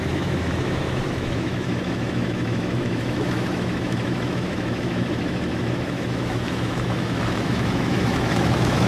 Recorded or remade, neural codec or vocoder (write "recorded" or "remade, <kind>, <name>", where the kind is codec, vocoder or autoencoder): remade, autoencoder, DAC-VAE